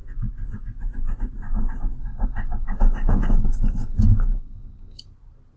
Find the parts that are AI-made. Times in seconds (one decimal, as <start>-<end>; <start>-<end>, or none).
2.0-5.1